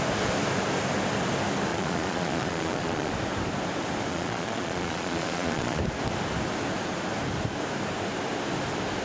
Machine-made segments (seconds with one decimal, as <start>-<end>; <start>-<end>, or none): 1.7-3.1; 4.1-5.8